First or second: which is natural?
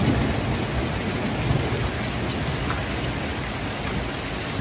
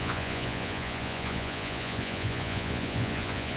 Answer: first